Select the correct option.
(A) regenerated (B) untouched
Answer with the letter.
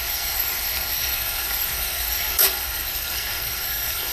A